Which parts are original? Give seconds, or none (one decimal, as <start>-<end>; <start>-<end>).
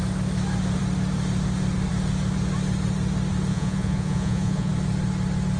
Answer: 0.0-3.5; 4.7-5.6